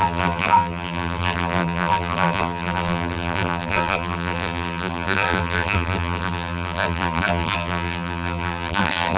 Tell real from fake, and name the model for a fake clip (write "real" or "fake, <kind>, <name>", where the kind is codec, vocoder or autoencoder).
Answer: fake, vocoder, BigVGAN v2